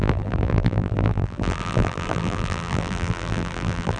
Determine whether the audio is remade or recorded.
remade